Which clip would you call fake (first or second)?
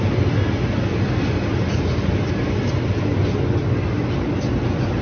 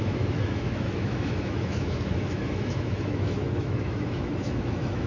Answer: second